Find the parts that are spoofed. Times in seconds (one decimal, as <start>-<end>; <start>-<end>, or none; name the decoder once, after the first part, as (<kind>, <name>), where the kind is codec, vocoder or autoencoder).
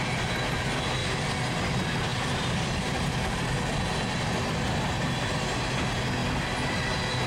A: none